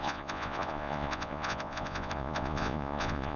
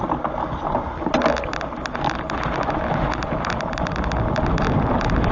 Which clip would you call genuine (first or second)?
second